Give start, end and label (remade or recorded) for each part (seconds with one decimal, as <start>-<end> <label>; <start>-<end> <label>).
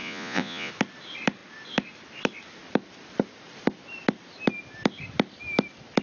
0.0-0.7 remade; 0.7-6.0 recorded